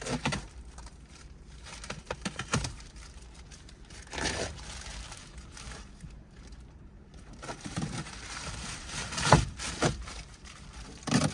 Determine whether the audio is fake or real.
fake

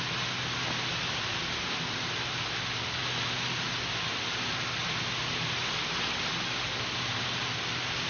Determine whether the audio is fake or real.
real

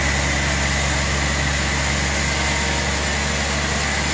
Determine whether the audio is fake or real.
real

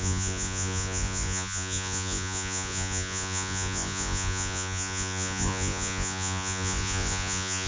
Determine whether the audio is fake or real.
fake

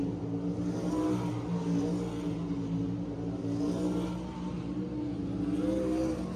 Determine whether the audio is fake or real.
real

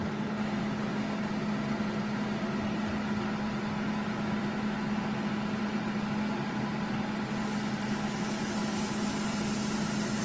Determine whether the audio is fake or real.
real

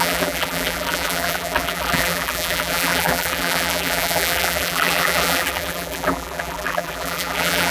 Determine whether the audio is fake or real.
fake